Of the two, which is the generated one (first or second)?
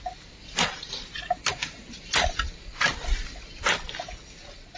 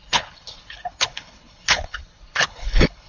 second